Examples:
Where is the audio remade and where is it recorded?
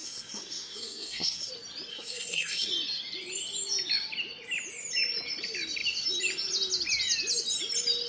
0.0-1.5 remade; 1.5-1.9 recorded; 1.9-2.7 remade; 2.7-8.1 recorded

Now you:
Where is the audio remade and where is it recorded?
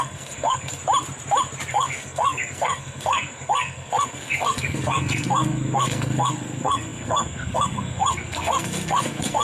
0.0-0.8 remade; 0.8-1.7 recorded; 1.7-9.4 remade